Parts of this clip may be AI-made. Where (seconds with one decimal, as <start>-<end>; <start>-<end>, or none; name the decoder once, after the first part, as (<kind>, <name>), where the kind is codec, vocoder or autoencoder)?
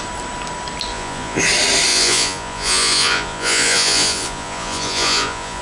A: 0.9-1.4 (vocoder, Vocos); 1.9-5.6